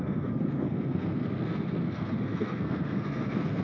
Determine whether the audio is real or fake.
fake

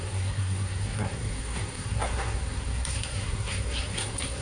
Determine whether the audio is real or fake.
fake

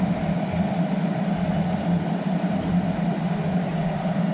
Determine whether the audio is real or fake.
real